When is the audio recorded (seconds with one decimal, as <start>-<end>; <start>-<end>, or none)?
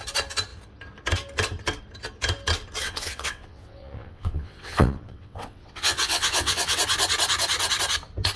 0.0-2.8; 6.8-8.4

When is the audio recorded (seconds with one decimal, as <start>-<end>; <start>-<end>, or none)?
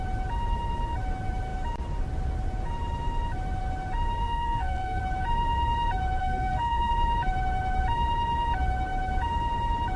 0.0-4.2; 5.0-6.2; 6.9-10.0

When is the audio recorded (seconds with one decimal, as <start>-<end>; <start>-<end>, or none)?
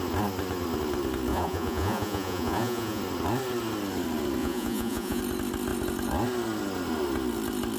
0.0-1.3; 3.0-4.4; 5.2-7.8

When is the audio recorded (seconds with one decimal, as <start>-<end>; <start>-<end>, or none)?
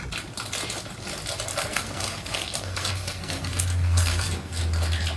0.0-1.5; 4.6-5.2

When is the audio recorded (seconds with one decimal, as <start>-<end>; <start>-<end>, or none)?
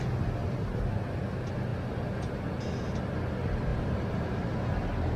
0.0-0.4; 1.0-3.7; 4.3-5.2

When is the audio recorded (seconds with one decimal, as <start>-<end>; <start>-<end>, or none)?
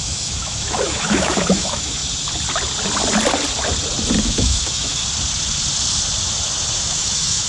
2.0-4.2; 5.0-6.8